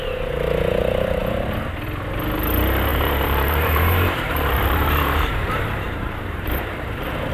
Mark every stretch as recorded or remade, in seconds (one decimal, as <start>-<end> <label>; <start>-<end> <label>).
0.0-2.9 recorded; 2.9-7.3 remade